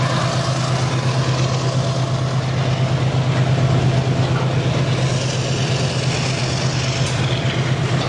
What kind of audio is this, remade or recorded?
recorded